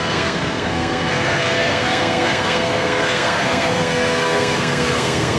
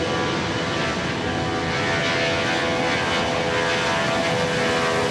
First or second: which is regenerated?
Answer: first